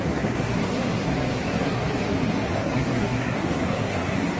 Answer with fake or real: fake